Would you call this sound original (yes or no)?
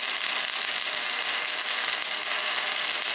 yes